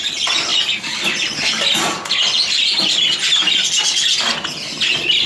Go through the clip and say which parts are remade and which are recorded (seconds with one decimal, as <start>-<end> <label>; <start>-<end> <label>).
0.0-5.3 recorded